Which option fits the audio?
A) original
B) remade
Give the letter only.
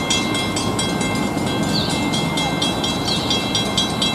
A